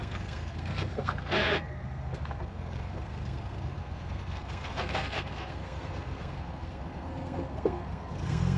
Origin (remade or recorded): remade